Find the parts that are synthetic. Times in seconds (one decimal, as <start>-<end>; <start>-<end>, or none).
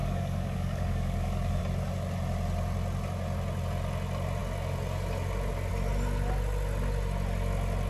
0.0-1.6